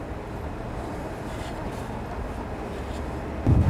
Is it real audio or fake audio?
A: real